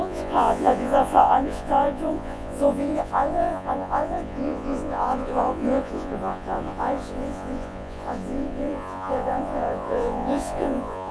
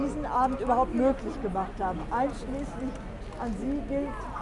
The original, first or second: second